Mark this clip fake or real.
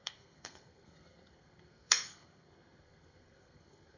fake